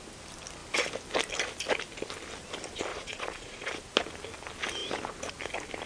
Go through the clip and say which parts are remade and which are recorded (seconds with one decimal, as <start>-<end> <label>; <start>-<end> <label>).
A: 0.0-2.9 recorded; 2.9-3.7 remade; 3.7-5.9 recorded